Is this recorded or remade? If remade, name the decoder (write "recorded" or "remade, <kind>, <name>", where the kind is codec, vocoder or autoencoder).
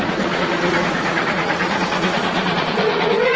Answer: remade, vocoder, Vocos